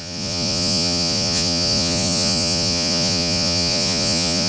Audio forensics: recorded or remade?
remade